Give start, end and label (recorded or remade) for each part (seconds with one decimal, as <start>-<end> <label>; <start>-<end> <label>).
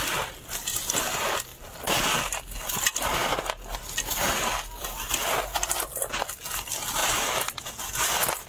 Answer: 0.0-8.5 recorded